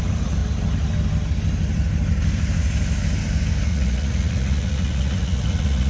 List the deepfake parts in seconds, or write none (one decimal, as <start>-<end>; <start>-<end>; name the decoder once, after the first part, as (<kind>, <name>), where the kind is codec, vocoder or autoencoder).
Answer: 3.7-5.9 (vocoder, Vocos)